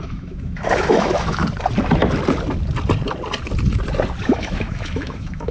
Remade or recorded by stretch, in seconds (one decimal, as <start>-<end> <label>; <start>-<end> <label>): 0.0-1.4 remade; 1.4-4.2 recorded; 4.2-5.5 remade